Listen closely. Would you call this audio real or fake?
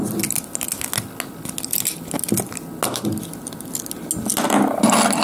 real